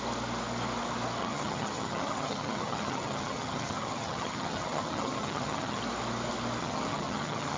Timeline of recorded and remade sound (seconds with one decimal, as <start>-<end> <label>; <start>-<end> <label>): 0.0-1.2 recorded; 1.2-5.8 remade; 5.8-6.6 recorded; 6.6-7.6 remade